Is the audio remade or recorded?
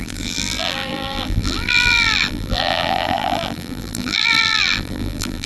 remade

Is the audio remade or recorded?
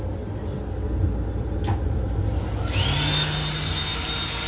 recorded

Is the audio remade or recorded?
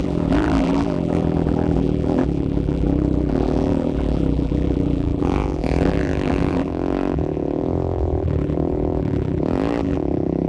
remade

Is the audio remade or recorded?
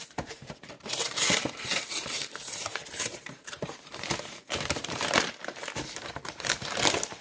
remade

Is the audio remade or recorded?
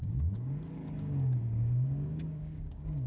remade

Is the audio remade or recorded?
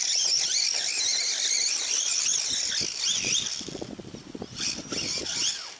recorded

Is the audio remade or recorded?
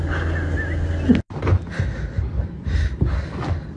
recorded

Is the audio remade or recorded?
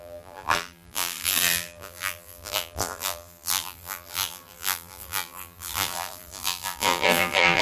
remade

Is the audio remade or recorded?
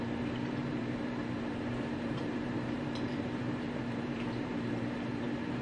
remade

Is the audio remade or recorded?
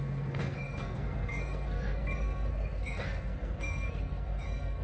remade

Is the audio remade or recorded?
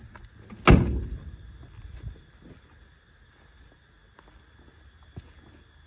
recorded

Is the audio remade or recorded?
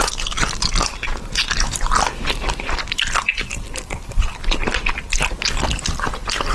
recorded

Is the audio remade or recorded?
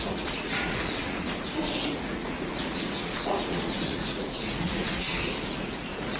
remade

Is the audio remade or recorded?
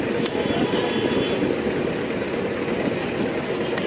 recorded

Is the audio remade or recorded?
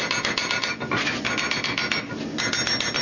recorded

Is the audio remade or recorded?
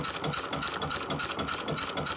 recorded